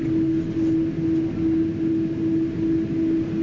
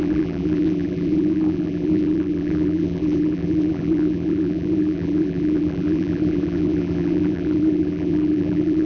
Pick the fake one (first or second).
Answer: second